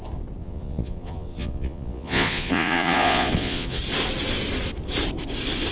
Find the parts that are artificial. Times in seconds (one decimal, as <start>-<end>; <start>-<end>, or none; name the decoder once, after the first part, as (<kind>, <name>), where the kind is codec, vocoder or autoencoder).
0.4-3.8 (vocoder, Vocos)